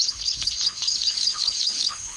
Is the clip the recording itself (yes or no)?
no